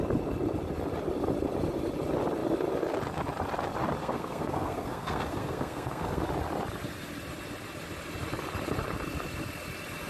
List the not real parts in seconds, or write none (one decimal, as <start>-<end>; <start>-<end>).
4.0-6.2